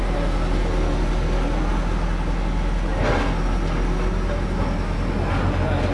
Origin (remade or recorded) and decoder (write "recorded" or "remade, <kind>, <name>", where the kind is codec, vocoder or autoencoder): recorded